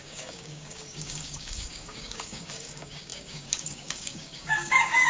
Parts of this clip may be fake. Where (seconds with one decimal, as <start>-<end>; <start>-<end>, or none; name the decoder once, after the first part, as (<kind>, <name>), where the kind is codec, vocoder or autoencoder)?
0.0-5.1 (codec, DAC)